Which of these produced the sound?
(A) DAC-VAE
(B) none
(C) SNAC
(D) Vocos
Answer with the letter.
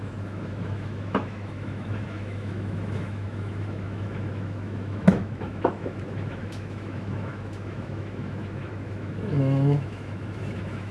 A